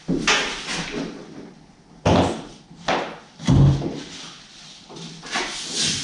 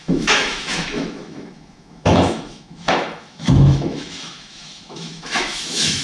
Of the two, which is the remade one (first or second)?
second